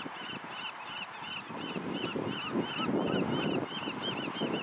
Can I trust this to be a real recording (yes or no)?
yes